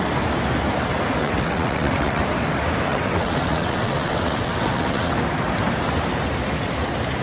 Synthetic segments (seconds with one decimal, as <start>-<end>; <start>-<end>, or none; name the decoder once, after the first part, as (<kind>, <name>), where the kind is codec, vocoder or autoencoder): 1.2-2.2 (vocoder, WaveNeXt); 2.9-5.1